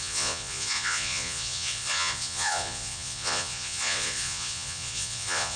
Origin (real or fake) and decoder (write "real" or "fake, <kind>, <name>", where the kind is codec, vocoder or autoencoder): fake, vocoder, Vocos